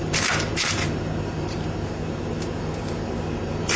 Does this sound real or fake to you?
fake